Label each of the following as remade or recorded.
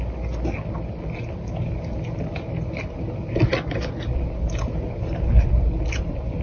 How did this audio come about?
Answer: recorded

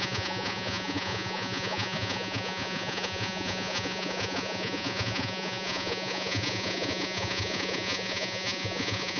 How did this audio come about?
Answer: remade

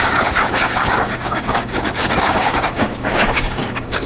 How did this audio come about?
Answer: remade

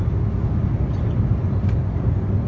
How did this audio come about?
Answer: recorded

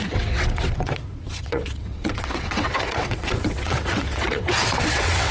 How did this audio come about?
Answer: remade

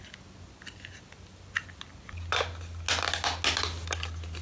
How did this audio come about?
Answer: recorded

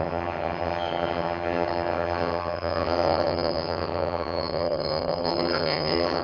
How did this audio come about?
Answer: remade